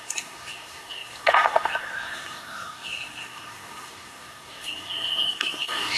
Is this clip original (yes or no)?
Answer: no